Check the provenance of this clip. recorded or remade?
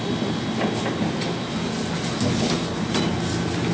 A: recorded